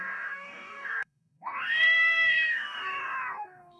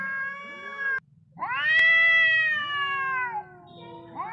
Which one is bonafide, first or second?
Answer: second